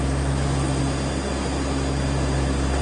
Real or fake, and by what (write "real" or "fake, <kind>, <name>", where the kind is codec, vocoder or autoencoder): real